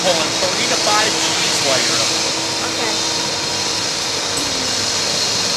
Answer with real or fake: real